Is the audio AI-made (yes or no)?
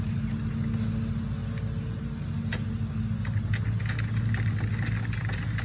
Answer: no